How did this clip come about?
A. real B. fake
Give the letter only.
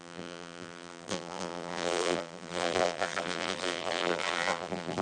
B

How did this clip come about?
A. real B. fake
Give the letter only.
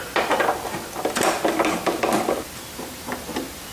A